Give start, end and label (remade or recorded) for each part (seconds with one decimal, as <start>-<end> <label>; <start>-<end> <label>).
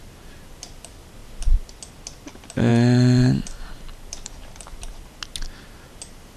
0.0-2.7 recorded; 2.7-5.1 remade; 5.1-6.4 recorded